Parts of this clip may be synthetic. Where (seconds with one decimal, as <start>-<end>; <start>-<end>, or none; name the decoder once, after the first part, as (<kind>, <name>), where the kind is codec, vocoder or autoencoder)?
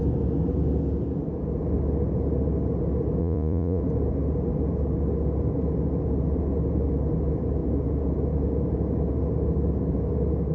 3.2-3.8 (vocoder, Vocos)